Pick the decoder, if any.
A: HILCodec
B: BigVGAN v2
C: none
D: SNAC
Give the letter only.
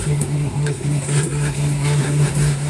D